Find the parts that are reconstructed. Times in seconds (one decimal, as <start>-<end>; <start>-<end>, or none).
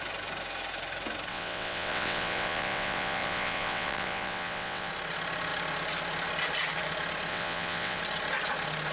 1.3-4.9; 7.3-8.0